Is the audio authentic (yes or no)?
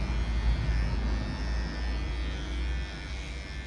yes